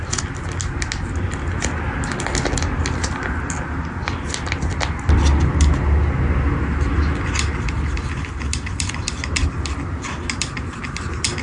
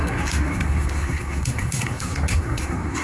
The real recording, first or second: first